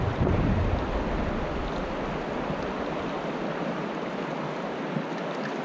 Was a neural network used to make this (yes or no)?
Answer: no